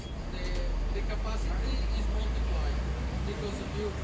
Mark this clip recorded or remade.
recorded